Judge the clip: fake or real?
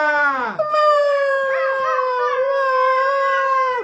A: fake